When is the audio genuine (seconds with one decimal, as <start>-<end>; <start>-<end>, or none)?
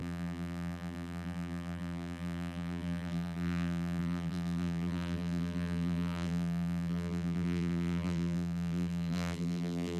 none